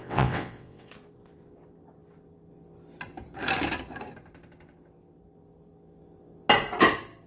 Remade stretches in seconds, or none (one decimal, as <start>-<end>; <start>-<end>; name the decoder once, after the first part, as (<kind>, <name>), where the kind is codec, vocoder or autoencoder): 0.0-0.9 (vocoder, WaveNeXt)